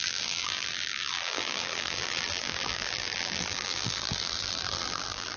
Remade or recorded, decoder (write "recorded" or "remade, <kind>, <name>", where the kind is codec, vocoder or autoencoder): remade, vocoder, BigVGAN v2